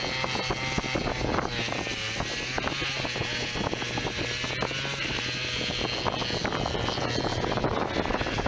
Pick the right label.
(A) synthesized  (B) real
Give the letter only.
B